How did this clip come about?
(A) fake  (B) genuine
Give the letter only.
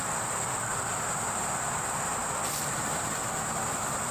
B